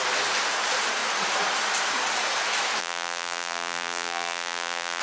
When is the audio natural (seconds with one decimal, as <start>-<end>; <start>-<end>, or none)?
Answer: 0.0-2.8